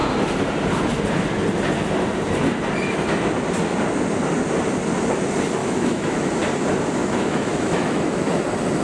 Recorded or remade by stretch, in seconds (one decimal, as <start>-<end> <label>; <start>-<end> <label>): 0.0-5.6 recorded; 5.6-6.3 remade; 6.3-7.0 recorded; 7.0-8.4 remade; 8.4-8.8 recorded